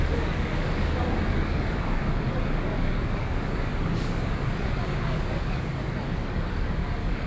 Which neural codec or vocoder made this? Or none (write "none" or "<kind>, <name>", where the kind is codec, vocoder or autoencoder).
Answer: codec, DAC